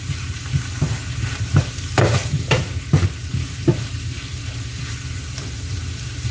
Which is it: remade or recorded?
remade